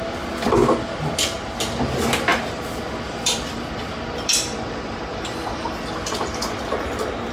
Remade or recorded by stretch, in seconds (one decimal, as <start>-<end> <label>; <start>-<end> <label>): 0.0-0.6 recorded; 0.6-1.6 remade; 1.6-2.3 recorded; 2.3-5.7 remade; 5.7-7.3 recorded